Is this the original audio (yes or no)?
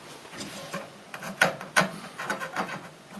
no